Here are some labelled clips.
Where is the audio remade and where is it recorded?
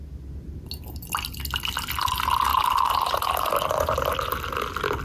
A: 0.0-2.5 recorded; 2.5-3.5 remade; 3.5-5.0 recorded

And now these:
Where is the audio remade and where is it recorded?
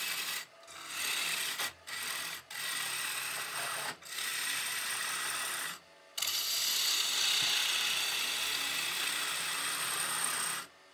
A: 0.0-10.9 recorded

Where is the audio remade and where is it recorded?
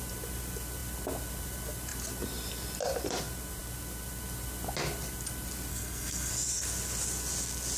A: 0.0-5.7 recorded; 5.7-6.3 remade; 6.3-7.8 recorded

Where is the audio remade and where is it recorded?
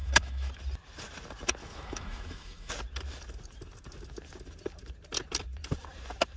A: 0.0-0.5 remade; 0.5-1.6 recorded; 1.6-2.7 remade; 2.7-6.4 recorded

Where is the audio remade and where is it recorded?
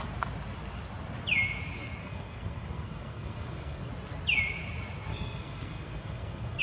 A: 0.0-2.0 recorded; 2.0-3.9 remade; 3.9-5.1 recorded; 5.1-6.6 remade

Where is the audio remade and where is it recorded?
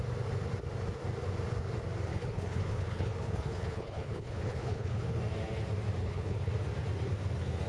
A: 0.0-2.1 recorded; 2.1-5.2 remade; 5.2-6.0 recorded; 6.0-6.5 remade; 6.5-7.7 recorded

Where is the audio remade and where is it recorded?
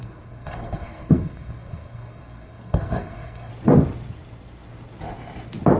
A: 0.0-3.5 remade; 3.5-5.8 recorded